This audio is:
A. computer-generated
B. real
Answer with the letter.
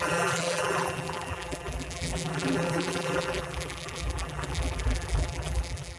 A